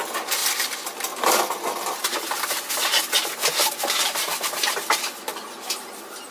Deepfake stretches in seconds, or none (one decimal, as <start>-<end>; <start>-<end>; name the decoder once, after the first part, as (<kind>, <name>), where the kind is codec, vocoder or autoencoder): 0.4-3.0 (vocoder, BigVGAN v2); 3.4-4.7

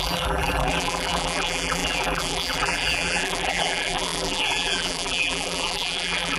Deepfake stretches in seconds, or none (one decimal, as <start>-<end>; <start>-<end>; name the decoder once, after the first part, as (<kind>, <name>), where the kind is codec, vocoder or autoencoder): 0.0-6.4 (vocoder, BigVGAN v2)

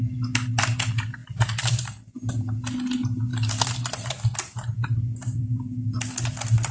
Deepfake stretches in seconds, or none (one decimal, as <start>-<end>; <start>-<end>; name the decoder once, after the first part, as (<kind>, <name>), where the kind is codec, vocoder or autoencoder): 1.2-2.3 (vocoder, BigVGAN v2); 3.3-6.1